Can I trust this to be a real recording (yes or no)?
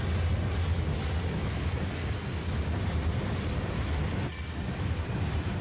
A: yes